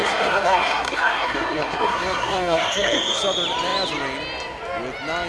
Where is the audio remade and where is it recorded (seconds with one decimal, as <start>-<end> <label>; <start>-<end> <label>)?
0.0-3.2 remade; 3.2-5.3 recorded